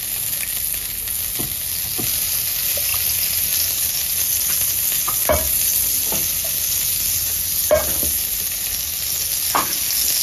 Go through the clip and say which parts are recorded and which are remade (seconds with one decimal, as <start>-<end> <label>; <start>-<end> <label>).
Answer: 0.0-10.2 recorded

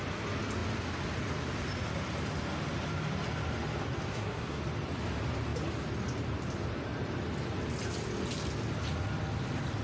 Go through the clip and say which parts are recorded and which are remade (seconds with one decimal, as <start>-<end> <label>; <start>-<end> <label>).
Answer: 0.0-4.1 recorded; 4.1-4.6 remade; 4.6-9.8 recorded

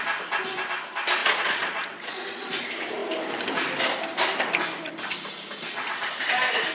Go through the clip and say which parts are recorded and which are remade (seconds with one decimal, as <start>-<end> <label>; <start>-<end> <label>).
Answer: 0.0-1.2 recorded; 1.2-2.5 remade; 2.5-6.7 recorded

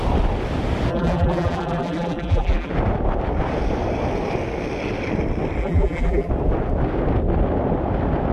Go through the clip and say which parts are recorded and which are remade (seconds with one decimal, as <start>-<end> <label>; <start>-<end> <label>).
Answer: 0.0-0.9 recorded; 0.9-2.7 remade; 2.7-5.6 recorded; 5.6-6.3 remade; 6.3-8.3 recorded

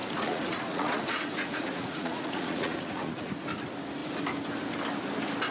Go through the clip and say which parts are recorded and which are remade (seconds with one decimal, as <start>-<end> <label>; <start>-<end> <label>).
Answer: 0.0-3.3 remade; 3.3-5.5 recorded

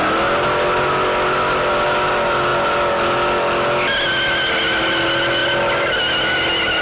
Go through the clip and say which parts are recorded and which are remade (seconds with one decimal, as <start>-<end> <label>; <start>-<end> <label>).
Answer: 0.0-6.8 recorded

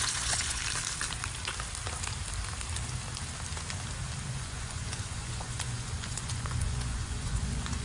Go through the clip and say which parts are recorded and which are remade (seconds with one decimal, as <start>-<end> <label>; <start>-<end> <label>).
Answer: 0.0-0.6 remade; 0.6-4.3 recorded; 4.3-7.8 remade